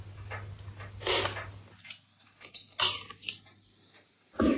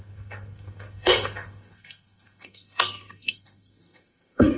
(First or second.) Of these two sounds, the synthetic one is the second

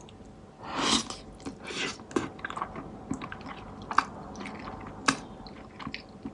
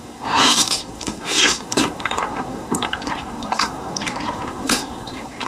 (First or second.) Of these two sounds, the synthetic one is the second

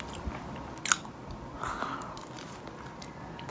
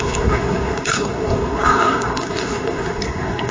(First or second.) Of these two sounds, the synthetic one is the second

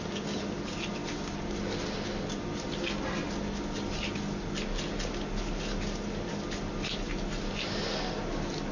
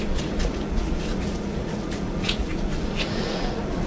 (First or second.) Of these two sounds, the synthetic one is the second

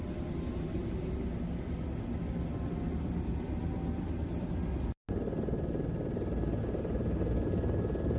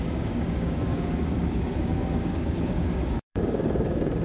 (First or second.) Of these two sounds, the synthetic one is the second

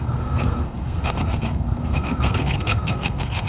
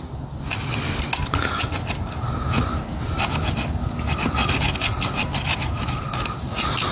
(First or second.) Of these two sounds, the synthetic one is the first